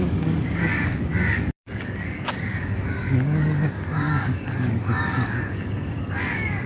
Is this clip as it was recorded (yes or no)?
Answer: no